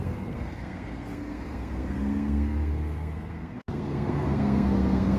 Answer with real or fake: fake